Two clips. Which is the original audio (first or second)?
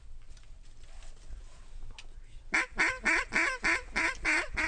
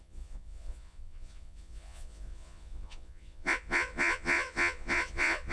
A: first